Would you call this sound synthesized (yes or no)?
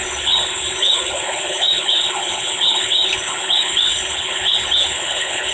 yes